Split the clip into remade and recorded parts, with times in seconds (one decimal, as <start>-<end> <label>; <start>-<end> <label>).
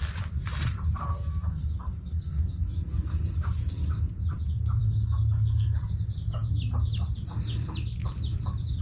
0.0-1.0 recorded; 1.0-3.1 remade; 3.1-4.8 recorded; 4.8-5.9 remade; 5.9-8.8 recorded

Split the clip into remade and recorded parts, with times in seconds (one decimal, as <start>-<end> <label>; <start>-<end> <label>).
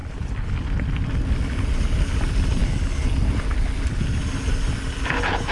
0.0-5.5 recorded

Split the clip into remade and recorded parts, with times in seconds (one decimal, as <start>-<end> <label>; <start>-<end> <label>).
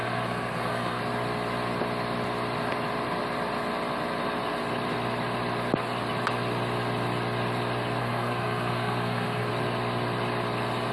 0.0-1.0 remade; 1.0-8.0 recorded; 8.0-9.5 remade; 9.5-10.9 recorded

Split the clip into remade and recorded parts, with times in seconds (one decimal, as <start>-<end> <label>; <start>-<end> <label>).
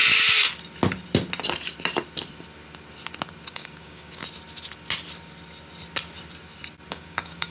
0.0-3.5 recorded; 3.5-4.2 remade; 4.2-6.9 recorded; 6.9-7.5 remade